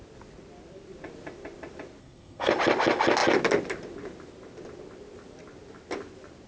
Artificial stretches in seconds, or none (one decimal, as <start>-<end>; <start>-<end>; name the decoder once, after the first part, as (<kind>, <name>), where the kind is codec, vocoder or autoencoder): 2.0-2.5 (codec, SNAC)